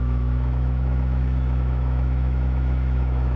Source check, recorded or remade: remade